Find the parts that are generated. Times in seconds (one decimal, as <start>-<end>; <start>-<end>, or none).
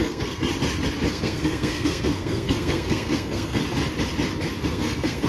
0.0-0.4; 1.1-3.6; 4.7-5.3